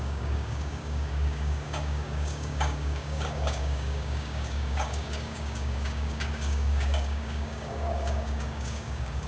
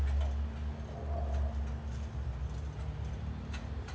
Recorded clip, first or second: second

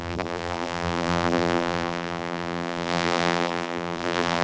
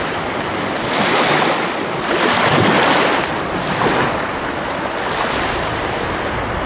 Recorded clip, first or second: second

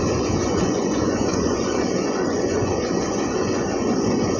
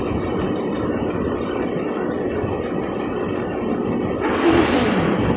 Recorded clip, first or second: second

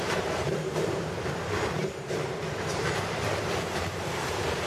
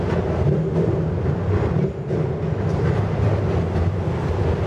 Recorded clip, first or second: second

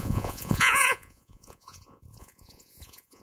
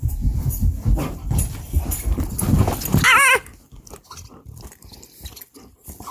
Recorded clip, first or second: second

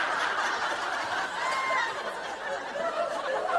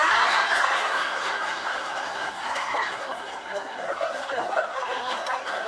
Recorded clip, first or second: first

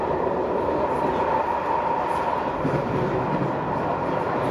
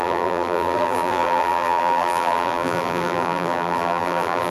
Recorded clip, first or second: first